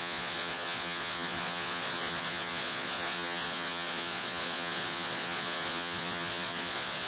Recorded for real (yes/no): no